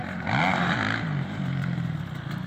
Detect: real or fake real